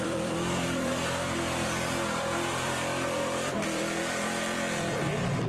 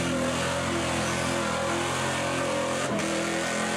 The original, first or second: second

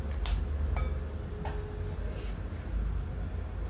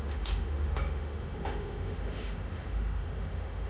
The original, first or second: first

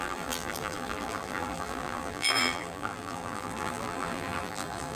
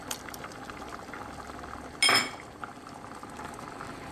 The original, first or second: second